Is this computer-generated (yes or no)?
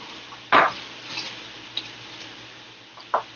no